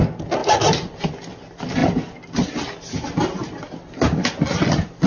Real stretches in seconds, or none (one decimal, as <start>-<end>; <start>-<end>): 0.0-5.1